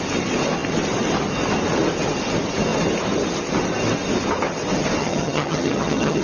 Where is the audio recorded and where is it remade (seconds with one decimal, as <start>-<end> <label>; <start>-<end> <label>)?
0.0-5.0 recorded; 5.0-6.2 remade

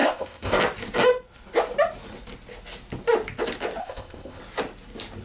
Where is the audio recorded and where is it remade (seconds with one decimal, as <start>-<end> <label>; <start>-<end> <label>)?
0.0-0.6 remade; 0.6-3.8 recorded; 3.8-4.4 remade; 4.4-5.2 recorded

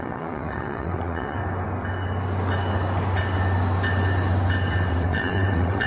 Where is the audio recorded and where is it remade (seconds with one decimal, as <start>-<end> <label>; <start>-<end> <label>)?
0.0-1.4 remade; 1.4-4.9 recorded; 4.9-5.9 remade

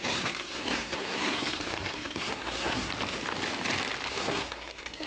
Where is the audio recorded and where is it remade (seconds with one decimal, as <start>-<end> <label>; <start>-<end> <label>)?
0.0-2.9 remade; 2.9-4.1 recorded; 4.1-5.1 remade